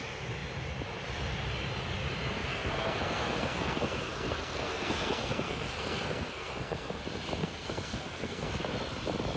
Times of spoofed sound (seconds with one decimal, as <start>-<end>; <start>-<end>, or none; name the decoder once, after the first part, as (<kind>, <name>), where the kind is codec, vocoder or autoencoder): 2.4-7.0 (codec, SNAC); 7.4-8.5

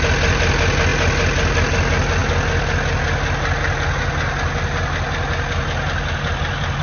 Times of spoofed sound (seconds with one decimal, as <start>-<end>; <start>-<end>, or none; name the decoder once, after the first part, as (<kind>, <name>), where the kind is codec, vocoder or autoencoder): none

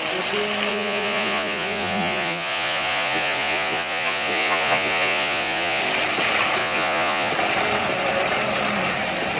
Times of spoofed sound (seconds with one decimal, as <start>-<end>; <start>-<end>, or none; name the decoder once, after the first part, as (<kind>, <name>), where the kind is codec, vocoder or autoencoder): 0.7-5.8 (vocoder, Vocos); 6.6-7.3

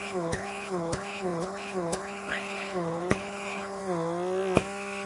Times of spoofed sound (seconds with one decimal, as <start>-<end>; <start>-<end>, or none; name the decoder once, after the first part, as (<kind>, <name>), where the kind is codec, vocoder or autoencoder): 0.0-3.8 (codec, HILCodec)

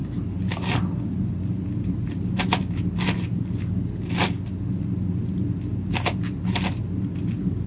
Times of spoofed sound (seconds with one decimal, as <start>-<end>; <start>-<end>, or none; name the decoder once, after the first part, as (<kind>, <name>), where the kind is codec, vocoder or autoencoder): none

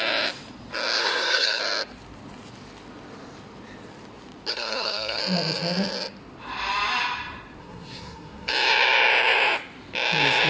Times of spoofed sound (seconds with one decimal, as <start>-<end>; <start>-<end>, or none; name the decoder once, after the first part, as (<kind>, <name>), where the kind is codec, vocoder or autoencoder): 1.0-1.6 (codec, SNAC); 4.5-5.2; 7.6-8.5

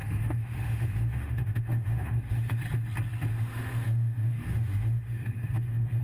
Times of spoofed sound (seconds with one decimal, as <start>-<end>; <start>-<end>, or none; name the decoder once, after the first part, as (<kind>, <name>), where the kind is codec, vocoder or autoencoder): 0.0-2.6 (autoencoder, DAC-VAE); 3.3-6.0

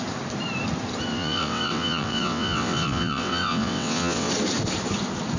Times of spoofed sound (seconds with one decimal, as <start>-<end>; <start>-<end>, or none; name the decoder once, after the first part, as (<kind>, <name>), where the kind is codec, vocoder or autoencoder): 1.1-4.3 (vocoder, WaveNeXt)